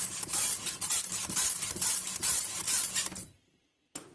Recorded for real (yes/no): yes